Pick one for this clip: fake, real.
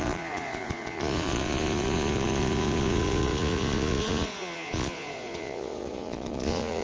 fake